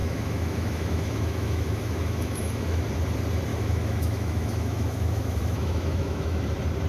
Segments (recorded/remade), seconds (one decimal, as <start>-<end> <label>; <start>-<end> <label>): 0.0-2.8 remade; 2.8-3.5 recorded; 3.5-6.4 remade; 6.4-6.9 recorded

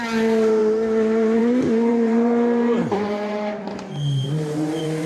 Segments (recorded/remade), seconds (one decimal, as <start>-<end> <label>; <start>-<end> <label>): 0.0-1.9 recorded; 1.9-5.1 remade

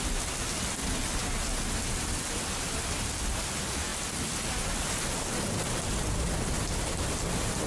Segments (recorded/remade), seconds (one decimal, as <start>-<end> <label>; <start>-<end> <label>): 0.0-7.7 recorded

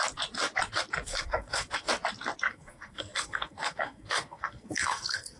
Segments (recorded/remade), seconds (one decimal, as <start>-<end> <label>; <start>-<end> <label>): 0.0-1.1 recorded; 1.1-1.9 remade; 1.9-2.5 recorded; 2.5-5.4 remade

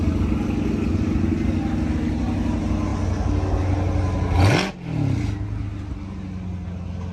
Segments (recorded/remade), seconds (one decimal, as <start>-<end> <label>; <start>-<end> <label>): 0.0-7.1 recorded

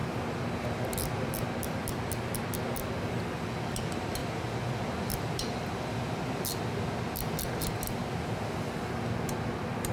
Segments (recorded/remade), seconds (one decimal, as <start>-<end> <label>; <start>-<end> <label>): 0.0-9.9 recorded

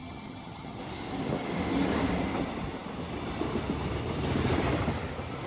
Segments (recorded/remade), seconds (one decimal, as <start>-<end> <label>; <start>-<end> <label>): 0.0-0.8 remade; 0.8-5.5 recorded